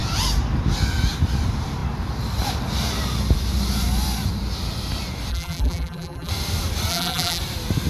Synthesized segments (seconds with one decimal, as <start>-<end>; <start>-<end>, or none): 5.3-6.3; 6.9-7.4